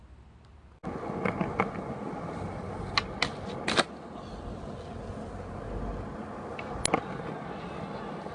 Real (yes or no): yes